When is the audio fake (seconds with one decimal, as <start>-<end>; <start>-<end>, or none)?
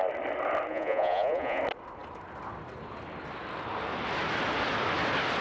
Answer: 0.7-1.6